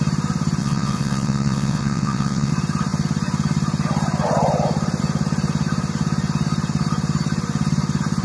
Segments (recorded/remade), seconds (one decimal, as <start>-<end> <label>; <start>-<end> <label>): 0.0-0.6 recorded; 0.6-2.5 remade; 2.5-8.2 recorded